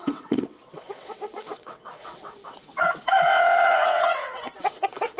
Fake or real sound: fake